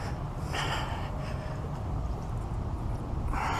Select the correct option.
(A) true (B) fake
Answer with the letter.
A